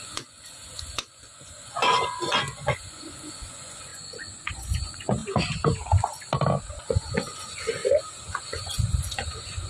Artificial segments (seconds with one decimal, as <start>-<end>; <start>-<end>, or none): 0.0-5.2; 6.6-7.8; 8.4-9.7